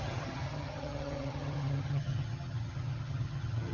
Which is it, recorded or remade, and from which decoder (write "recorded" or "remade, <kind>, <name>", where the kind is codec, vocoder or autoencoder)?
remade, vocoder, HiFi-GAN